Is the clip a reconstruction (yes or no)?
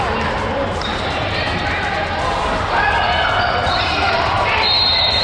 no